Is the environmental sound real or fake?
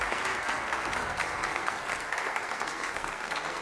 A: fake